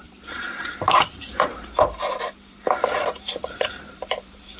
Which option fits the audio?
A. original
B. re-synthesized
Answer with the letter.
B